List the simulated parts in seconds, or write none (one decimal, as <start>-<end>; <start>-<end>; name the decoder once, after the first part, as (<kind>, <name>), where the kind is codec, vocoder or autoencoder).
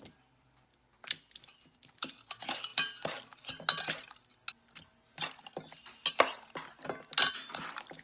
0.0-2.7 (vocoder, BigVGAN v2); 7.3-8.0